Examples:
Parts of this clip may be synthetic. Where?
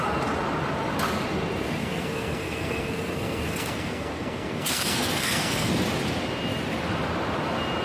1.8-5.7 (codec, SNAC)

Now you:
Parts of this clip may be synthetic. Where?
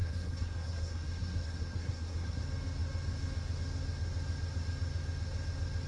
0.0-2.4 (codec, SNAC)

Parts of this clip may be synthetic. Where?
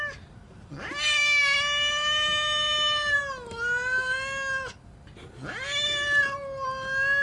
none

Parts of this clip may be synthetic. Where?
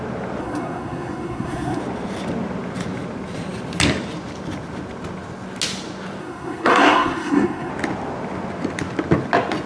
0.4-1.8 (codec, SNAC); 6.2-7.7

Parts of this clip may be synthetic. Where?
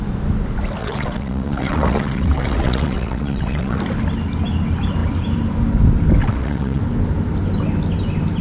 0.8-3.8 (vocoder, WaveNeXt); 6.2-6.8